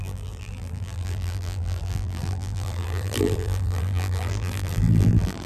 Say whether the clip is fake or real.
fake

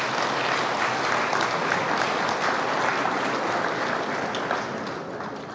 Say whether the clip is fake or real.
real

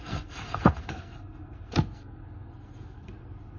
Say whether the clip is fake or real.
fake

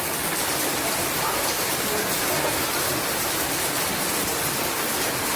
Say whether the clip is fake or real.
real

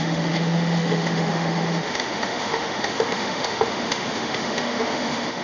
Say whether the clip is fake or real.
fake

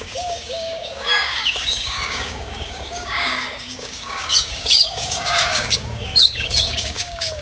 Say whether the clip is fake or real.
fake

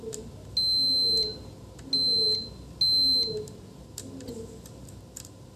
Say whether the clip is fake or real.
real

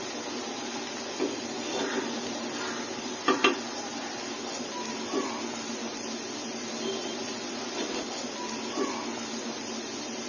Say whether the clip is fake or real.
real